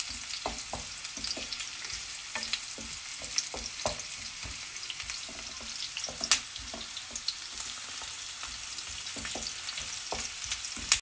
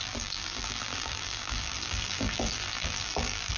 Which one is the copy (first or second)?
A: second